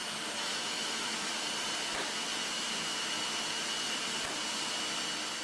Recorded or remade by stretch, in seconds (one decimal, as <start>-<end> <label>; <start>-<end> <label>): 0.0-1.3 remade; 1.3-5.4 recorded